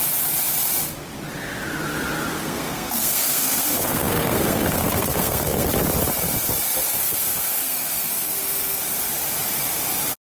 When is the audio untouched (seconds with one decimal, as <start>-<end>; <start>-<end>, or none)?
0.0-2.3; 5.7-7.0; 8.8-10.3